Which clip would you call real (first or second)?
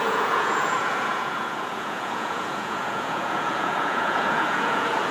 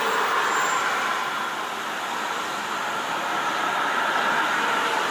second